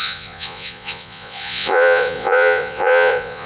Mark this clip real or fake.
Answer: fake